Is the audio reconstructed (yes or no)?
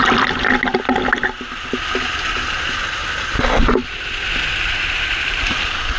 no